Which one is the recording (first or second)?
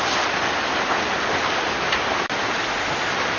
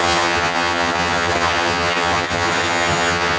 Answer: first